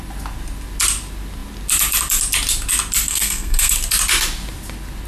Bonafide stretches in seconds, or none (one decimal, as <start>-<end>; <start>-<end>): 0.0-3.1; 3.7-5.1